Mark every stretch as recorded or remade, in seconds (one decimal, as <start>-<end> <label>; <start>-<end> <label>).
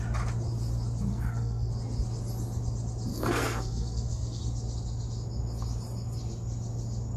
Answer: 0.0-1.1 recorded; 1.1-1.7 remade; 1.7-3.1 recorded; 3.1-4.4 remade; 4.4-7.2 recorded